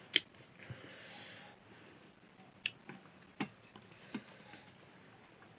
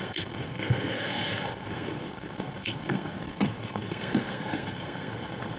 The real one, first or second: first